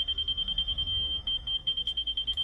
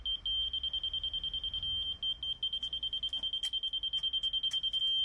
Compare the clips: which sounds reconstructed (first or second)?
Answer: first